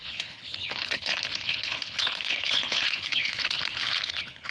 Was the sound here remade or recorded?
remade